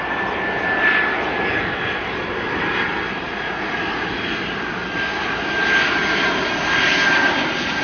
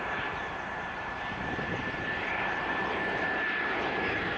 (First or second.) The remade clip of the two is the second